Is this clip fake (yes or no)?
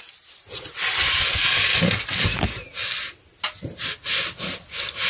no